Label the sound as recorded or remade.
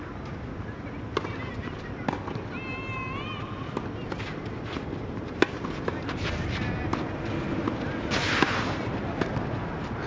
recorded